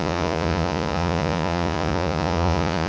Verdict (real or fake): fake